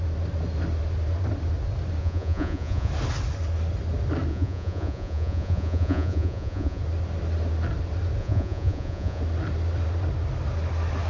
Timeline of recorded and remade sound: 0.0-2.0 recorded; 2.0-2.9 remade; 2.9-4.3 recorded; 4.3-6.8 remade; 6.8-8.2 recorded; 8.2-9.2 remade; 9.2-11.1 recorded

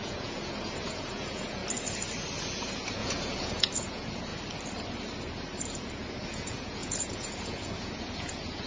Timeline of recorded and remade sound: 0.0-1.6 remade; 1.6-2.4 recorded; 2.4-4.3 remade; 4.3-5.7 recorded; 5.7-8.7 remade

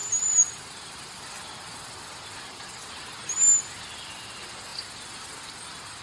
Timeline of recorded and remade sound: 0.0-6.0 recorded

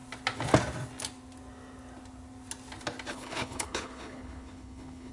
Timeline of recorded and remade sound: 0.0-3.1 recorded; 3.1-5.1 remade

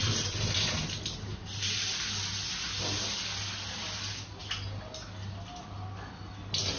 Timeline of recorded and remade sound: 0.0-1.3 recorded; 1.3-1.9 remade; 1.9-6.8 recorded